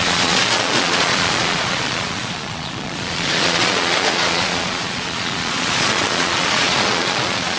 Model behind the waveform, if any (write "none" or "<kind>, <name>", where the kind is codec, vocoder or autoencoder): vocoder, Vocos